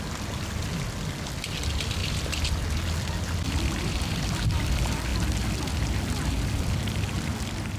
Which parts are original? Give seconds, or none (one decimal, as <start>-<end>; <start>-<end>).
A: 0.0-7.8